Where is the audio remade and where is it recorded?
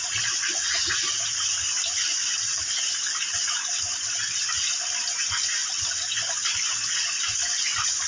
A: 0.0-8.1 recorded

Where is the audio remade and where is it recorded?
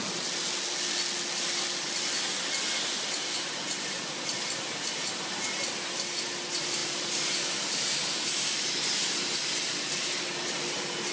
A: 0.0-11.1 recorded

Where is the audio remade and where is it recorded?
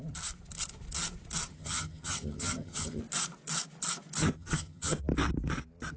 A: 0.0-1.5 recorded; 1.5-3.0 remade; 3.0-4.2 recorded; 4.2-5.0 remade; 5.0-6.0 recorded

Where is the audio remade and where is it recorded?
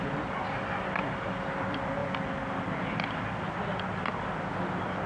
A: 0.0-5.1 recorded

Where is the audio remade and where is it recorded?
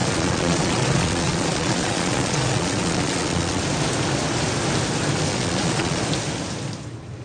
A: 0.0-3.6 remade; 3.6-5.3 recorded; 5.3-6.0 remade; 6.0-7.2 recorded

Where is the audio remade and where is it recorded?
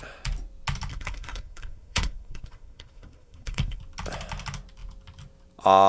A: 0.0-0.9 recorded; 0.9-3.8 remade; 3.8-5.9 recorded